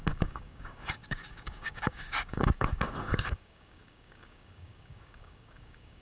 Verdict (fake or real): fake